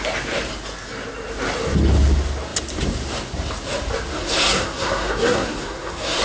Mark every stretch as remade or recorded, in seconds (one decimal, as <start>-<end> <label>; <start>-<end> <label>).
0.0-4.1 recorded; 4.1-6.2 remade